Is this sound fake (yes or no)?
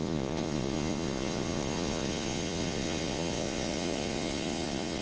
yes